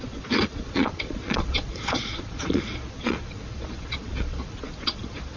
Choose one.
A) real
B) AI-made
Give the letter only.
B